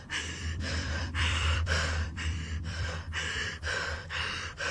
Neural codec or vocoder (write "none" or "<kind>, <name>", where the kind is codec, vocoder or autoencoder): vocoder, BigVGAN v2